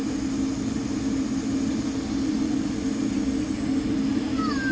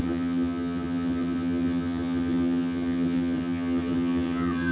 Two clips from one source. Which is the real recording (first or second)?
first